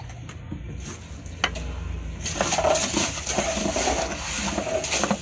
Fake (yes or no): no